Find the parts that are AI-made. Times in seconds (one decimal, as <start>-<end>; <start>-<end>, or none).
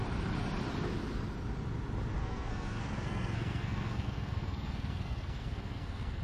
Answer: 2.2-6.2